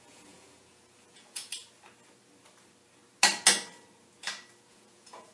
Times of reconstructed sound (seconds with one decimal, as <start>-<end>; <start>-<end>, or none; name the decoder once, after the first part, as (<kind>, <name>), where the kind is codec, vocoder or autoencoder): 0.0-1.5 (vocoder, Vocos); 4.7-5.3